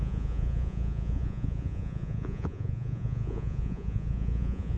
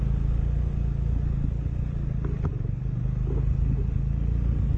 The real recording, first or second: second